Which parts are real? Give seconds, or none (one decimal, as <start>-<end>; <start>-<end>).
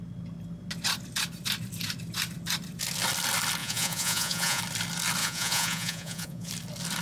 0.0-3.6; 4.6-5.2; 6.5-7.0